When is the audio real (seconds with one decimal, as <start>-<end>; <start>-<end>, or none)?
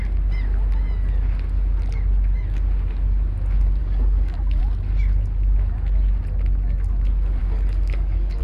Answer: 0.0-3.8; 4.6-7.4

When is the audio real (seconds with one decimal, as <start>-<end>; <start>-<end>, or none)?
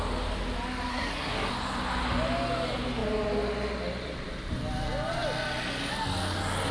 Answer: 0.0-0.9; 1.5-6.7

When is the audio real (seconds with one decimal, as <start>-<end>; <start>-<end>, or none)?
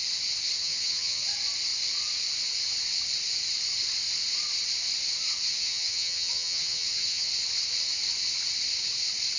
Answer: 0.0-0.6; 1.2-5.5; 7.3-9.4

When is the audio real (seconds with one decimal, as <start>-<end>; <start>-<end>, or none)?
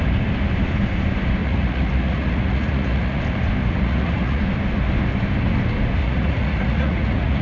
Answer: 0.0-1.4; 3.2-3.6; 4.4-6.0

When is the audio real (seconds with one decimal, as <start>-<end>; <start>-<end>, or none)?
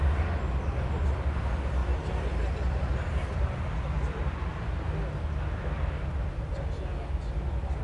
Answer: 0.0-7.8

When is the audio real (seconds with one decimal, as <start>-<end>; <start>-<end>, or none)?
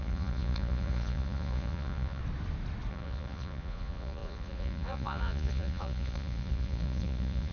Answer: 2.2-2.9